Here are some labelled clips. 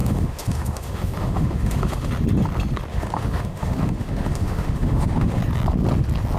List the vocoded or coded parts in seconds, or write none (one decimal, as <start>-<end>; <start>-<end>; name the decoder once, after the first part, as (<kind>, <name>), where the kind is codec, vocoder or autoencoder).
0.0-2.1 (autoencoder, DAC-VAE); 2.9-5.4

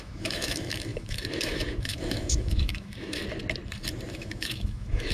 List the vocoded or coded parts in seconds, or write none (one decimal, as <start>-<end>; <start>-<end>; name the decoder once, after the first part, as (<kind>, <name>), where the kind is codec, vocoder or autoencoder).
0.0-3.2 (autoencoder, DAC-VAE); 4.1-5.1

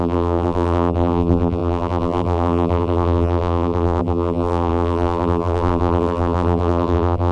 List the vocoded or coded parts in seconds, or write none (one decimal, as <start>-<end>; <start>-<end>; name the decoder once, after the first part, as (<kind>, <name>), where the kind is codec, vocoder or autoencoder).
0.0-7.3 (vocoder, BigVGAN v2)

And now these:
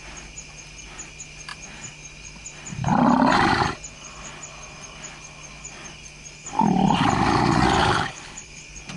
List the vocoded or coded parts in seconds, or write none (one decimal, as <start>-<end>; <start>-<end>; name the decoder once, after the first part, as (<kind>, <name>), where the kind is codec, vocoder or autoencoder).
7.8-8.6 (codec, HILCodec)

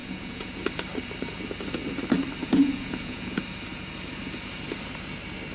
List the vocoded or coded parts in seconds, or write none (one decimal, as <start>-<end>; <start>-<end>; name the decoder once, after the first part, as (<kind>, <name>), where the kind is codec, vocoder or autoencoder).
0.0-0.6 (vocoder, Vocos); 2.4-3.4